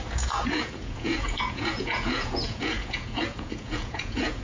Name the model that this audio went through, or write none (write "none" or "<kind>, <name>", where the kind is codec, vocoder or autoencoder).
vocoder, Vocos